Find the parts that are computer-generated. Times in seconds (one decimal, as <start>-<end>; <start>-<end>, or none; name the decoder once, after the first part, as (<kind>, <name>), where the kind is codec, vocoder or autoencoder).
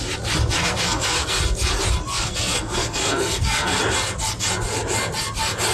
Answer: 0.6-1.4 (codec, SNAC); 2.1-3.8